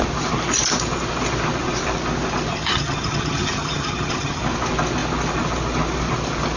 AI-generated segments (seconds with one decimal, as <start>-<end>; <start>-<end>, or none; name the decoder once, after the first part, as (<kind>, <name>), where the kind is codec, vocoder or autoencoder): 2.5-4.4 (vocoder, HiFi-GAN)